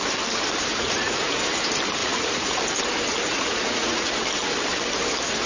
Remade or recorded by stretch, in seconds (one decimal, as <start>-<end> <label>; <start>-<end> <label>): 0.0-0.7 recorded; 0.7-1.4 remade; 1.4-2.0 recorded; 2.0-2.6 remade; 2.6-3.3 recorded; 3.3-4.2 remade; 4.2-5.5 recorded